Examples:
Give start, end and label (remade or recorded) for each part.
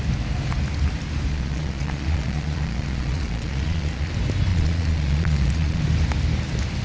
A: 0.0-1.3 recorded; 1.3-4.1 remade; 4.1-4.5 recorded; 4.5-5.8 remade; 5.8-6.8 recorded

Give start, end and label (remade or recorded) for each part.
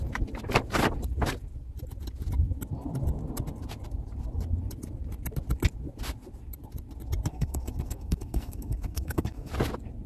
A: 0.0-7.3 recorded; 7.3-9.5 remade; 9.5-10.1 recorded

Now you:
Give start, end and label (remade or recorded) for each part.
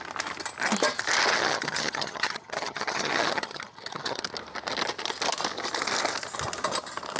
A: 0.0-1.3 recorded; 1.3-4.2 remade; 4.2-7.2 recorded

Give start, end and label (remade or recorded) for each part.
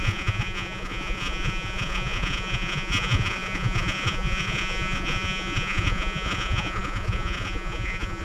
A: 0.0-8.2 remade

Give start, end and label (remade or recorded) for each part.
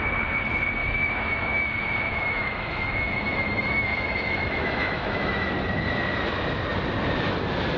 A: 0.0-0.8 recorded; 0.8-5.5 remade; 5.5-7.8 recorded